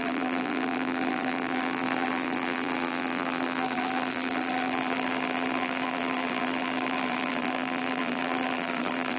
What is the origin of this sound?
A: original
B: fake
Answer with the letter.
B